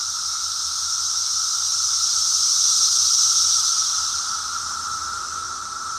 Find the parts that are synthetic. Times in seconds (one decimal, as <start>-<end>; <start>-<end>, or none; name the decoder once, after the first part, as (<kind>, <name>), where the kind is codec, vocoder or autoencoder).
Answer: none